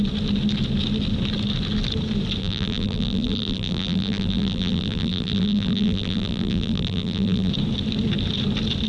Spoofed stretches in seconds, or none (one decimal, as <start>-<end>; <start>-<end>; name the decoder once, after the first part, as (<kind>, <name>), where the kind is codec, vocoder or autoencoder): 2.4-7.5 (vocoder, BigVGAN v2)